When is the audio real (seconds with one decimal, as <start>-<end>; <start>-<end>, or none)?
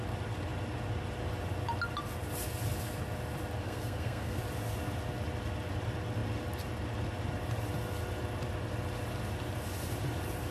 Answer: 0.0-3.6; 4.4-10.5